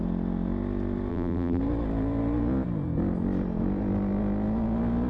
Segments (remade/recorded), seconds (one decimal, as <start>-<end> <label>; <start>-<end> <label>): 0.0-1.1 recorded; 1.1-1.6 remade; 1.6-5.1 recorded